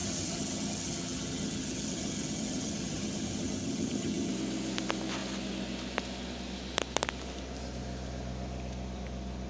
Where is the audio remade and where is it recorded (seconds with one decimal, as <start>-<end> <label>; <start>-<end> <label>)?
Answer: 0.0-4.3 remade; 4.3-9.5 recorded